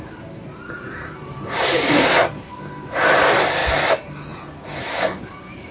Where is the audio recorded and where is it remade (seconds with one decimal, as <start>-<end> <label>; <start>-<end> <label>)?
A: 0.0-1.2 recorded; 1.2-2.6 remade; 2.6-5.7 recorded